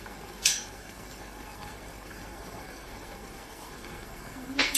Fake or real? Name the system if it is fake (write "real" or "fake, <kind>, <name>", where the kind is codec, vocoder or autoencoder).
fake, codec, SNAC